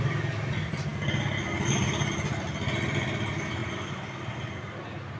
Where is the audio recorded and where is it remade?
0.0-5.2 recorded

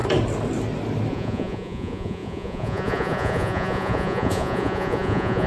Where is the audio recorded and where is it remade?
0.0-1.1 recorded; 1.1-5.5 remade